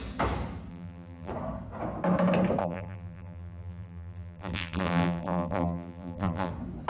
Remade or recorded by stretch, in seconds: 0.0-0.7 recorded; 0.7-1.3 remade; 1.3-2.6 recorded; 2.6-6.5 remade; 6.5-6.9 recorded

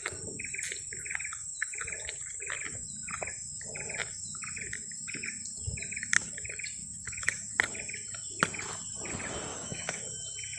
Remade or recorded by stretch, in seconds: 0.0-6.8 recorded; 6.8-7.5 remade; 7.5-9.5 recorded; 9.5-10.0 remade; 10.0-10.6 recorded

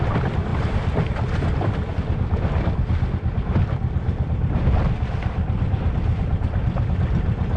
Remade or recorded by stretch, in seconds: 0.0-7.6 recorded

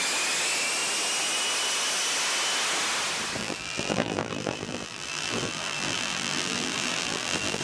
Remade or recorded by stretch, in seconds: 0.0-3.4 recorded; 3.4-7.6 remade